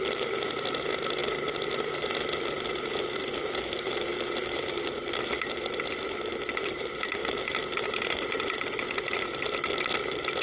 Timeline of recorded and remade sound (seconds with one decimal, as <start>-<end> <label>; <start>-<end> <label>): 0.0-10.4 recorded